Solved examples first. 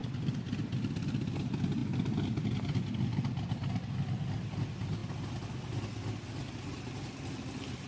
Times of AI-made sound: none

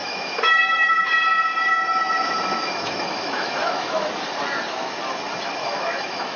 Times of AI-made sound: 0.0-1.1 (autoencoder, DAC-VAE); 1.7-4.1; 5.6-6.4